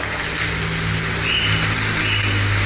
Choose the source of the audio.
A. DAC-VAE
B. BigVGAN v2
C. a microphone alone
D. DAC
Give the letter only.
C